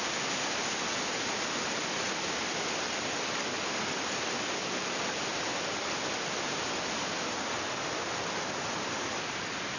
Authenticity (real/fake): real